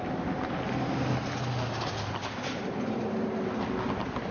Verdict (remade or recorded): recorded